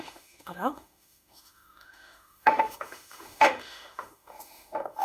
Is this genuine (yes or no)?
no